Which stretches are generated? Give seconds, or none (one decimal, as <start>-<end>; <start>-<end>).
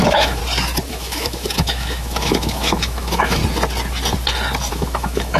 0.0-0.4; 0.9-3.4; 4.7-5.4